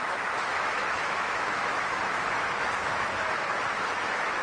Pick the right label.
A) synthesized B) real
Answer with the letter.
A